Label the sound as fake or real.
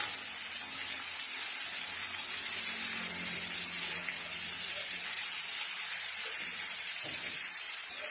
real